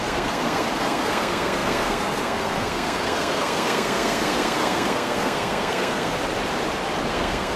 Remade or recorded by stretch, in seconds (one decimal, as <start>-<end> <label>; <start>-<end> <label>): 0.0-6.2 remade; 6.2-7.1 recorded; 7.1-7.6 remade